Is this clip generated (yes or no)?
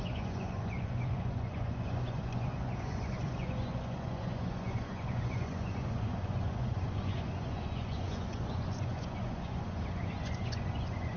yes